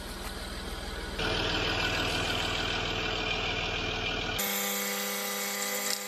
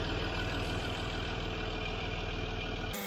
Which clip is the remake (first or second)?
second